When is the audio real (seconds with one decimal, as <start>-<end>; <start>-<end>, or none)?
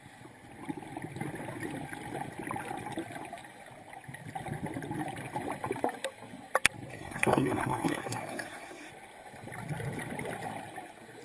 0.0-6.9; 8.9-11.2